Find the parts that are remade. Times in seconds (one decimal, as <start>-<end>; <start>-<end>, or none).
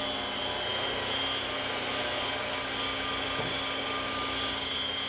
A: none